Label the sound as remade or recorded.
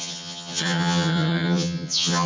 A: remade